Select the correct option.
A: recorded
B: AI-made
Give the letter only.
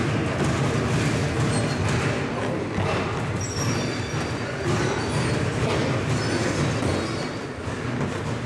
A